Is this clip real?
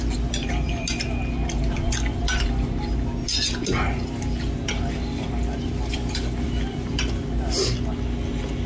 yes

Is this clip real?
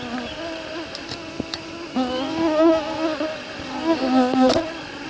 yes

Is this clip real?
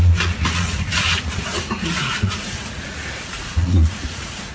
no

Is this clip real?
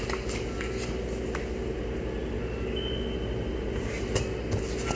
yes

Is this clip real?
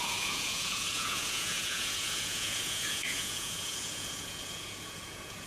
no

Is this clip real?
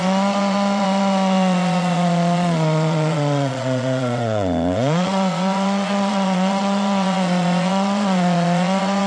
no